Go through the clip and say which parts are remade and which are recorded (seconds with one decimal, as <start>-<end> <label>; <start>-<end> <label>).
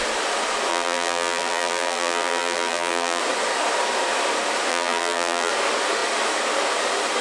0.0-0.7 recorded; 0.7-3.2 remade; 3.2-4.7 recorded; 4.7-5.5 remade; 5.5-7.2 recorded